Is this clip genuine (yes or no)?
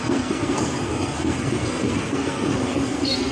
no